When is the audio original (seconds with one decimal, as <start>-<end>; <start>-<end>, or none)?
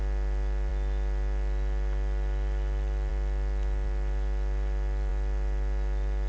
0.0-6.3